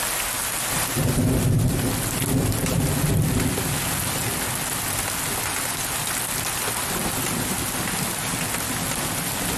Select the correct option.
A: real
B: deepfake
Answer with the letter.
A